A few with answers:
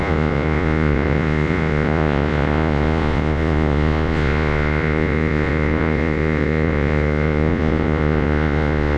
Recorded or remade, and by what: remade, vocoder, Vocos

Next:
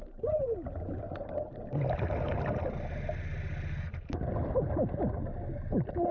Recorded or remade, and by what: recorded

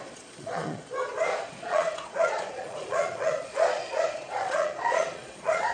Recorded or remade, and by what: remade, vocoder, Vocos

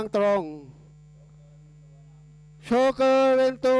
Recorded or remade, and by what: recorded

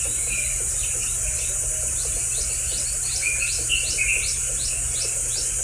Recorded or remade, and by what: recorded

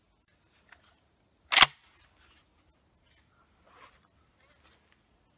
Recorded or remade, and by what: recorded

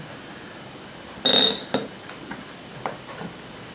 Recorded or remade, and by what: recorded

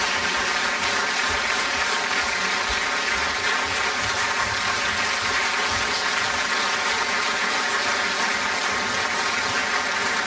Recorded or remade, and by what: recorded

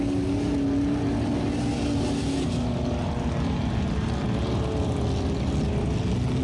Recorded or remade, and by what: recorded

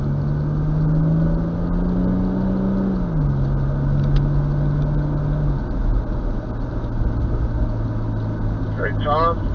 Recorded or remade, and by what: recorded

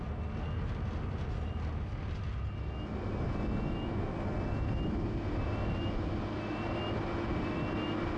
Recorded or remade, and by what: recorded